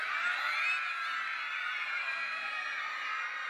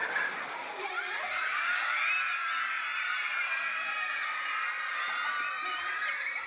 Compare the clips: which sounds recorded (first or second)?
first